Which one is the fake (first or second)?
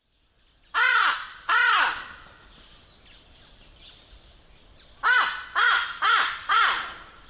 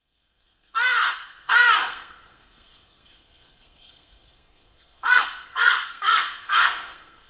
second